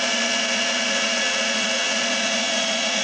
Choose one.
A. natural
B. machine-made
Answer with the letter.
B